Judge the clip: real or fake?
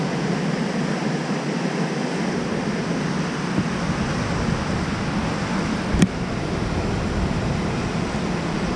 real